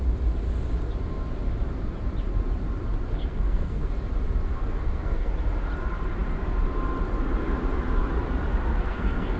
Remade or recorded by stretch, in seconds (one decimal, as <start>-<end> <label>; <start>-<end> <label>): 0.0-3.1 recorded; 3.1-3.9 remade; 3.9-4.7 recorded; 4.7-5.3 remade; 5.3-8.7 recorded; 8.7-9.4 remade